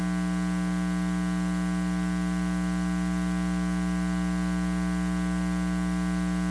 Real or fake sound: real